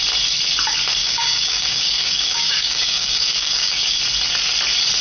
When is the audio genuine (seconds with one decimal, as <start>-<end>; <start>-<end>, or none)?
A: 0.0-1.0; 4.0-5.0